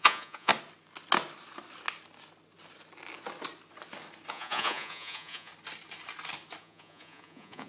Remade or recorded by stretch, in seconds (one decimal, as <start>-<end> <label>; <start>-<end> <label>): 0.0-0.5 remade; 0.5-4.3 recorded; 4.3-5.5 remade; 5.5-6.6 recorded; 6.6-7.7 remade